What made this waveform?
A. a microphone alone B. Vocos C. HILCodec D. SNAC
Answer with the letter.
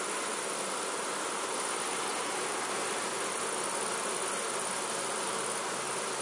A